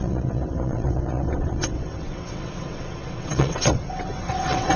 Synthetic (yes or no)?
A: yes